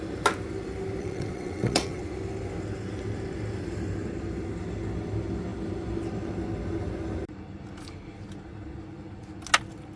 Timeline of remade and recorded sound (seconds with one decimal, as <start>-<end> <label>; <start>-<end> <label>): 0.0-1.0 recorded; 1.0-2.0 remade; 2.0-10.0 recorded